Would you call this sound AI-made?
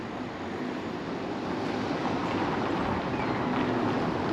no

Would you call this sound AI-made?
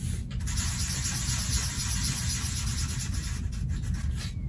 no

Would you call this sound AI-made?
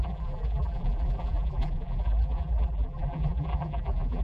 yes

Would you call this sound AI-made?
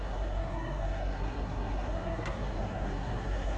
yes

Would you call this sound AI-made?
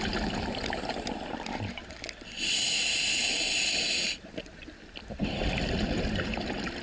no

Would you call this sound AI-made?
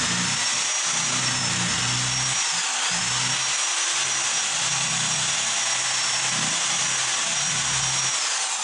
no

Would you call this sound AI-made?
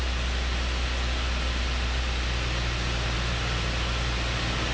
no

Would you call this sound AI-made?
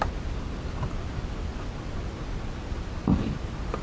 no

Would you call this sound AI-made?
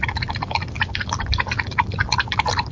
no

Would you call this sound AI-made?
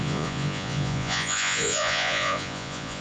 yes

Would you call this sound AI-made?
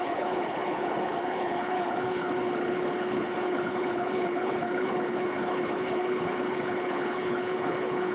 yes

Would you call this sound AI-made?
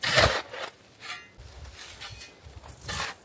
no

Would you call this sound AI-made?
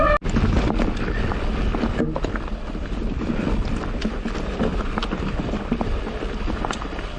no